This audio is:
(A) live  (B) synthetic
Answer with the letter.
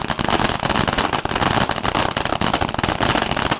A